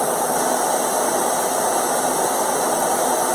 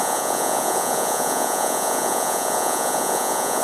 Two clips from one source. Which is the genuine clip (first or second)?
first